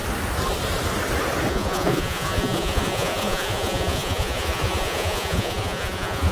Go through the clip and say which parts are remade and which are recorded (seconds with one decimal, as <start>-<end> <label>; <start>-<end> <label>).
0.0-1.5 recorded; 1.5-6.3 remade